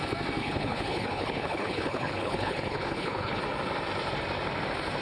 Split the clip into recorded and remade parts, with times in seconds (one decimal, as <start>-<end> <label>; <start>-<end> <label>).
0.0-0.4 recorded; 0.4-3.4 remade; 3.4-5.0 recorded